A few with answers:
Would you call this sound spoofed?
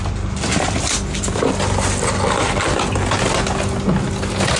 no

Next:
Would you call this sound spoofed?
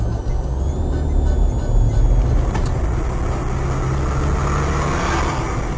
no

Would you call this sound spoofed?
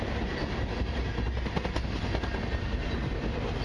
no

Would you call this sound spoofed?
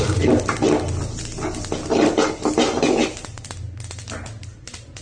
no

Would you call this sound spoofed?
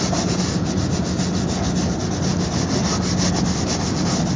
no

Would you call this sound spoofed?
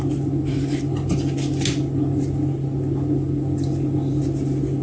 no